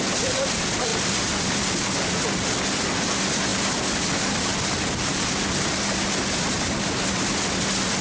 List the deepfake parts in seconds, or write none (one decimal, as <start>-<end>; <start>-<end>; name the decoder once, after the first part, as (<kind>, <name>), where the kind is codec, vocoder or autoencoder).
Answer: none